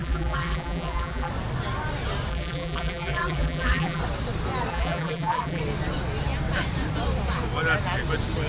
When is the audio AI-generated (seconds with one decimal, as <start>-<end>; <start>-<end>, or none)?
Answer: 0.0-1.3; 2.3-4.0; 4.7-5.6